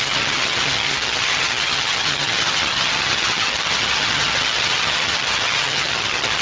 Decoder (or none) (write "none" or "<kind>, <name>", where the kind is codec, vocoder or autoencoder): vocoder, HiFi-GAN